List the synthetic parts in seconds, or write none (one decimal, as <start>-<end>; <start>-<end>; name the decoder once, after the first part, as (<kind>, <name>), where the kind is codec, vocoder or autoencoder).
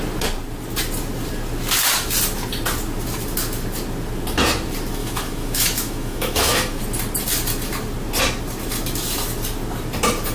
5.0-6.8 (autoencoder, DAC-VAE)